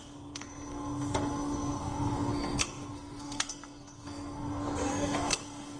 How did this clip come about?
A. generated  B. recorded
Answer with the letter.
A